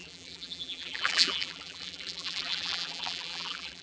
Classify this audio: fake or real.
fake